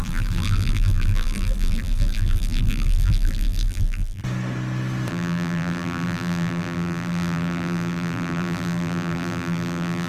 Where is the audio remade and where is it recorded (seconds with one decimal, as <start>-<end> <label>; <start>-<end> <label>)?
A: 0.0-4.2 remade; 4.2-5.1 recorded; 5.1-10.1 remade